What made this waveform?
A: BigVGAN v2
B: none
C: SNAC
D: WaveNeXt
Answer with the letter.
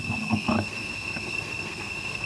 C